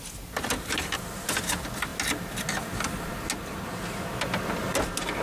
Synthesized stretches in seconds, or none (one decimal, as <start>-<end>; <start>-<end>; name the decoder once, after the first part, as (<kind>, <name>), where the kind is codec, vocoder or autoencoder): none